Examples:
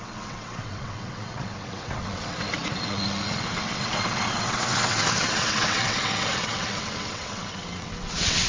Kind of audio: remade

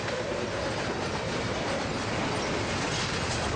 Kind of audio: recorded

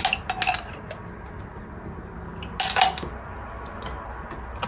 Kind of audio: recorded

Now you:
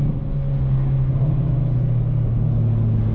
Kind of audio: recorded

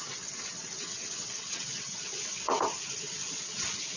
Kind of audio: remade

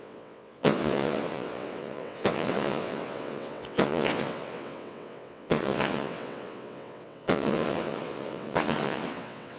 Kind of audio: remade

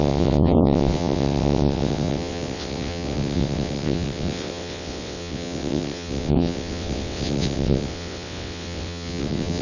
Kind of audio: remade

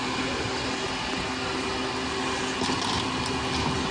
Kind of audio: recorded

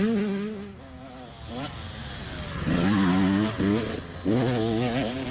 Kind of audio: recorded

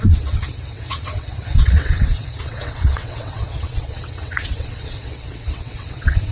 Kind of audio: remade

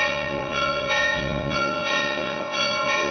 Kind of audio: remade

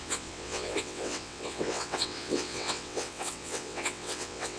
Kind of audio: remade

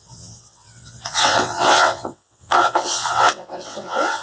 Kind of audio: remade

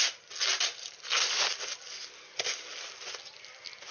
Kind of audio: recorded